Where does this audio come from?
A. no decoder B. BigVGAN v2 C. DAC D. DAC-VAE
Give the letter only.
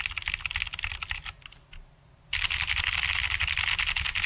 A